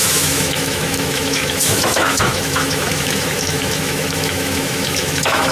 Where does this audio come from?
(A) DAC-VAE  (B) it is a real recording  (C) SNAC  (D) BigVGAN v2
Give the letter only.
A